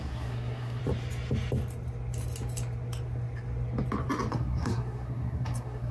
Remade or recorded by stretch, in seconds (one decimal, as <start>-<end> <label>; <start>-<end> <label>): 0.0-0.8 remade; 0.8-4.3 recorded; 4.3-5.9 remade